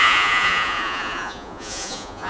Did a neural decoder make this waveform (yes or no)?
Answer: yes